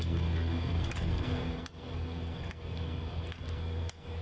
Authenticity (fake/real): fake